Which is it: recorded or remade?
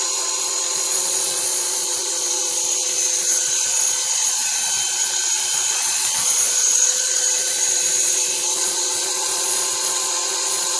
remade